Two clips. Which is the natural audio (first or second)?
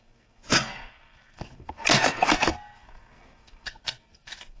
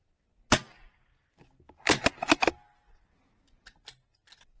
second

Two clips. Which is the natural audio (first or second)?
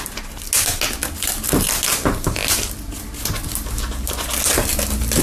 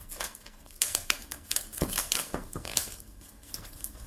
first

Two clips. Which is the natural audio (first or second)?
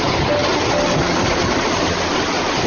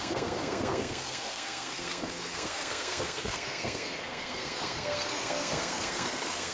first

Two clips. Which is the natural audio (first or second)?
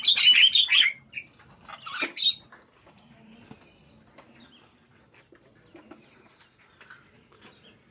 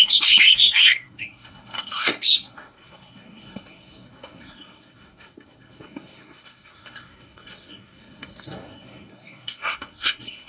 first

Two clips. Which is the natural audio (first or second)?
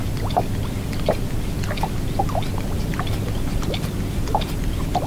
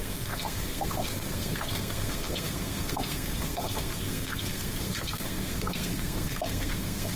first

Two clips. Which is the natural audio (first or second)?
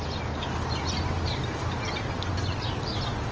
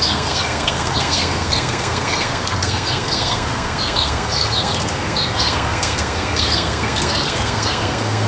first